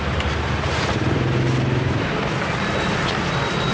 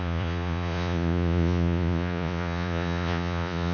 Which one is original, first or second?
first